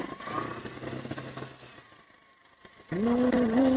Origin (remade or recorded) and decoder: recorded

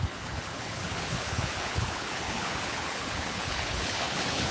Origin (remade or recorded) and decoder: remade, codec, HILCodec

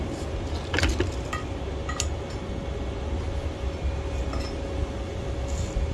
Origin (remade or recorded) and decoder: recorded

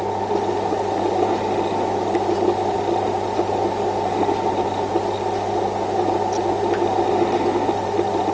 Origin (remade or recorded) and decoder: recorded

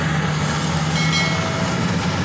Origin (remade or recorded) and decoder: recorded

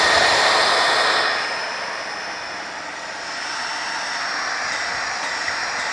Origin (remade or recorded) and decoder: recorded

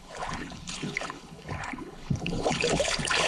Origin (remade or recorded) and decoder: remade, codec, HILCodec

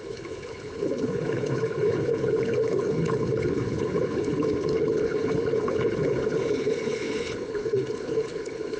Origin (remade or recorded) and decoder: remade, codec, HILCodec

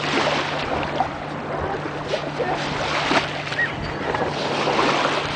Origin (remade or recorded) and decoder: recorded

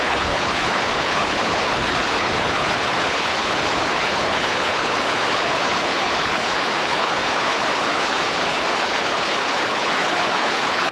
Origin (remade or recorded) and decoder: remade, codec, HILCodec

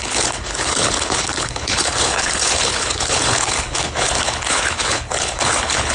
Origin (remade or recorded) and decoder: remade, codec, HILCodec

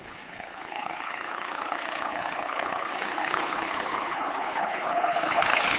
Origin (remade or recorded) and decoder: remade, codec, HILCodec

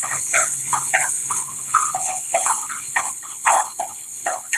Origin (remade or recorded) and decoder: remade, codec, HILCodec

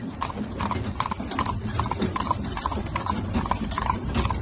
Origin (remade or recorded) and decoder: recorded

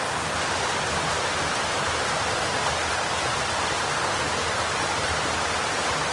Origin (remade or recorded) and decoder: recorded